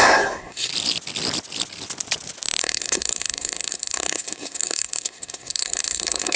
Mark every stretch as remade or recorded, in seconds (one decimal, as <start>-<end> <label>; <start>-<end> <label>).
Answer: 0.0-0.7 remade; 0.7-2.6 recorded; 2.6-6.4 remade